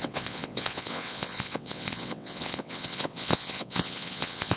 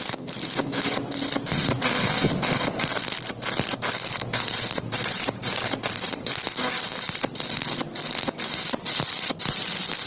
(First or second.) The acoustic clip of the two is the second